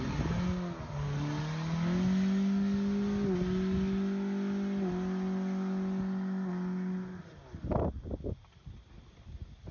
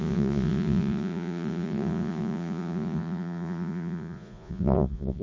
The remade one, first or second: second